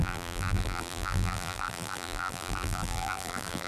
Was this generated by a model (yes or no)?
yes